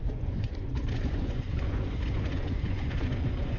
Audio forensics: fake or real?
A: fake